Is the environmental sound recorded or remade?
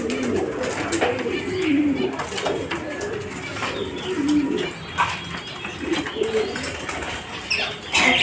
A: recorded